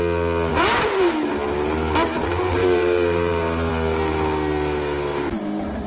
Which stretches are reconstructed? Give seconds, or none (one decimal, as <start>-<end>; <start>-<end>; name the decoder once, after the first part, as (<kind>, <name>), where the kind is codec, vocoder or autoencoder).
0.5-1.1 (vocoder, BigVGAN v2); 2.6-3.7; 5.1-5.9